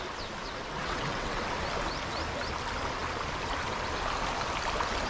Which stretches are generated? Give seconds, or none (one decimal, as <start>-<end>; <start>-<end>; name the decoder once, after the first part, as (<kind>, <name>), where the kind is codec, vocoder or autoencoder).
0.8-1.4 (vocoder, WaveNeXt)